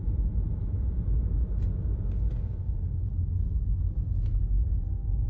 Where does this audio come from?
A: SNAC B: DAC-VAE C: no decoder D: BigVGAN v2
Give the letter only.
C